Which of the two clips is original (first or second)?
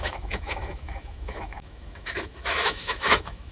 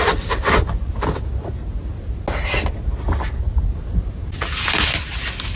second